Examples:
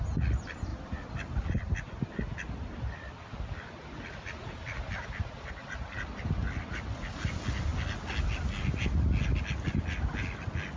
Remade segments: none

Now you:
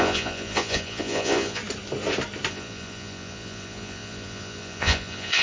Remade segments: 0.0-1.6 (vocoder, Vocos); 2.5-5.4

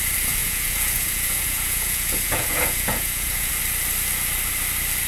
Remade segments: 0.4-3.5 (vocoder, Vocos)

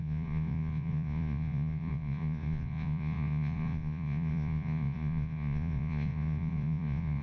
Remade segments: 0.0-7.2 (vocoder, Vocos)

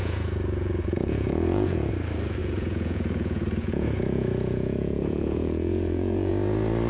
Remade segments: 0.0-1.9 (vocoder, Vocos); 2.4-6.3

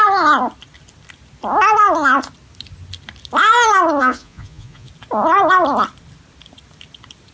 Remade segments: 4.0-4.9 (vocoder, Vocos)

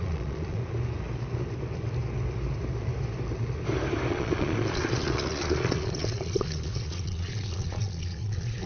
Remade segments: 0.0-0.6 (vocoder, Vocos); 4.1-8.7

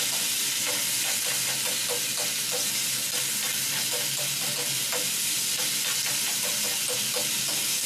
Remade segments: none